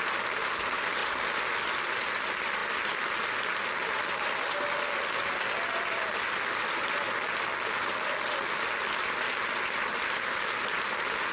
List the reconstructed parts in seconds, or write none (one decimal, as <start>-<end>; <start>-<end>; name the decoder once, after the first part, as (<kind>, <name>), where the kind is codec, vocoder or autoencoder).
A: none